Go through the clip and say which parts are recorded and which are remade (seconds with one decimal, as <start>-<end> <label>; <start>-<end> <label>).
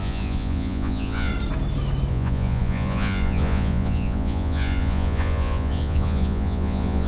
0.0-1.3 remade; 1.3-2.1 recorded; 2.1-7.1 remade